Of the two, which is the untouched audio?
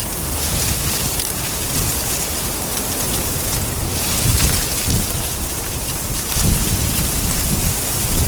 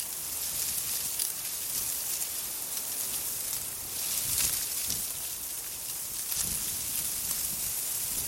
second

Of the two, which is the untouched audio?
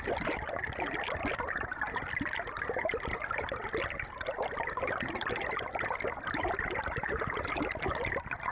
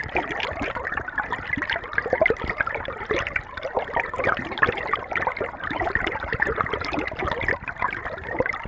first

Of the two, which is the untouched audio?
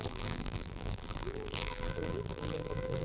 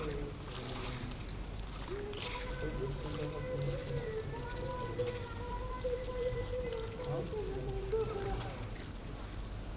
second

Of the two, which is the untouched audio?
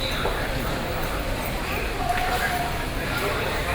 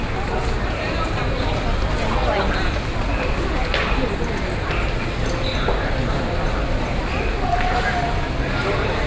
second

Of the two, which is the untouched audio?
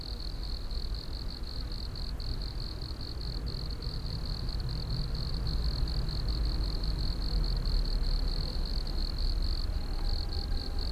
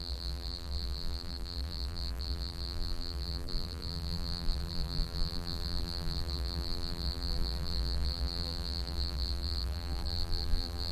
first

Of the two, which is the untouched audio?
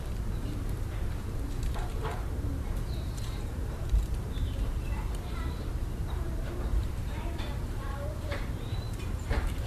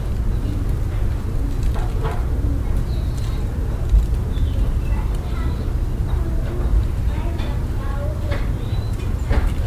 second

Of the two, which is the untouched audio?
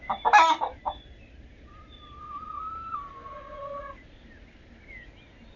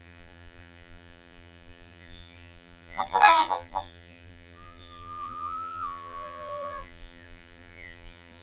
first